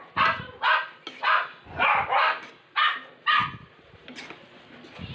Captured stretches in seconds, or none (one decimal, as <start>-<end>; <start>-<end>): 0.0-5.1